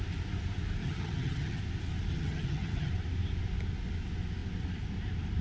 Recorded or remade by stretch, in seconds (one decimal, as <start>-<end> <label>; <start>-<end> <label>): 0.0-0.8 recorded; 0.8-1.6 remade; 1.6-2.1 recorded; 2.1-2.9 remade; 2.9-5.4 recorded